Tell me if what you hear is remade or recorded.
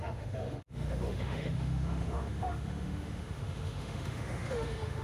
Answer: remade